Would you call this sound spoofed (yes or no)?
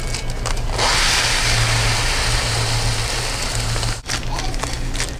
no